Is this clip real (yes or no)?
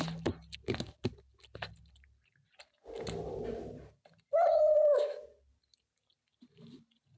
yes